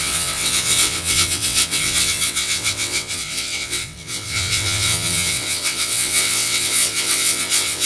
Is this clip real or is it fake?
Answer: fake